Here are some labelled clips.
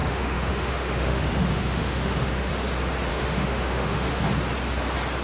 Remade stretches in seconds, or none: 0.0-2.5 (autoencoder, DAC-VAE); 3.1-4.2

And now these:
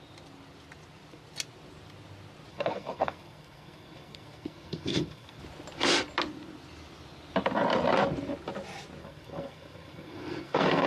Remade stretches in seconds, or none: 2.5-5.4 (codec, SNAC); 9.0-10.9

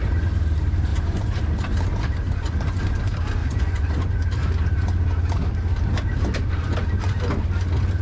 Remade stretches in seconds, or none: 0.9-1.4 (vocoder, Vocos); 3.4-4.1

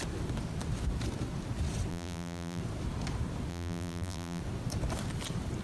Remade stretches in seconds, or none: 1.9-2.6 (vocoder, BigVGAN v2); 3.5-4.4